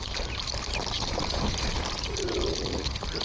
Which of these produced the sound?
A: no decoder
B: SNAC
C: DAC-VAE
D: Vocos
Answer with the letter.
A